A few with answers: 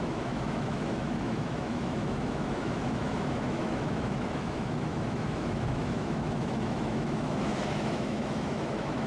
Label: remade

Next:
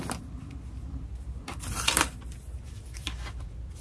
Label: recorded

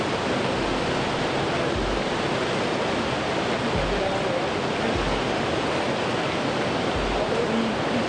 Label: recorded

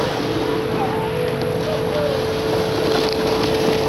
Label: recorded